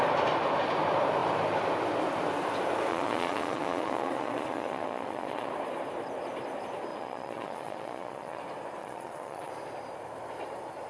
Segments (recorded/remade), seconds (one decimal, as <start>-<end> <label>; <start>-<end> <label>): 0.0-2.9 recorded; 2.9-5.5 remade; 5.5-6.9 recorded; 6.9-8.4 remade; 8.4-8.8 recorded; 8.8-9.5 remade; 9.5-10.9 recorded